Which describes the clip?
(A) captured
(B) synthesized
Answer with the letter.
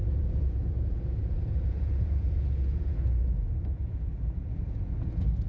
B